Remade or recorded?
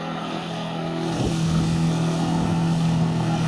remade